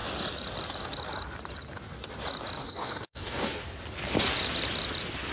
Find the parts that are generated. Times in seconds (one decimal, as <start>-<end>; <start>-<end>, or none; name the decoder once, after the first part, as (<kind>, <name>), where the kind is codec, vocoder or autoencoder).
2.6-3.6 (codec, DAC)